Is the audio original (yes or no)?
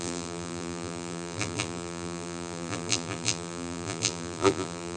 no